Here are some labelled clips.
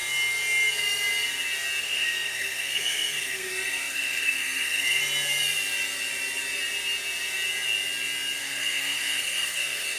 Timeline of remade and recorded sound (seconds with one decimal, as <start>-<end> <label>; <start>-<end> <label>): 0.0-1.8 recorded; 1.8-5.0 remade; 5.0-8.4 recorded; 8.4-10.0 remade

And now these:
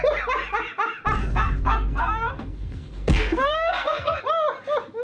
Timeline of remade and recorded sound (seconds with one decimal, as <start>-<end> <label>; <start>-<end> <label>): 0.0-1.2 recorded; 1.2-4.2 remade; 4.2-5.0 recorded

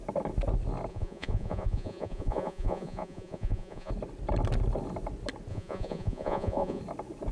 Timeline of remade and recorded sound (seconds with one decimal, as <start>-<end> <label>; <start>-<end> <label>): 0.0-0.9 recorded; 0.9-3.9 remade; 3.9-5.5 recorded; 5.5-6.8 remade; 6.8-7.3 recorded

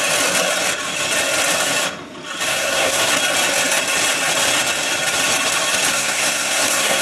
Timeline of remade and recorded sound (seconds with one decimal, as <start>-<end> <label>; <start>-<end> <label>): 0.0-2.5 recorded; 2.5-3.1 remade; 3.1-5.9 recorded; 5.9-7.0 remade